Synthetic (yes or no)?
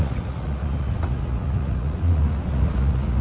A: yes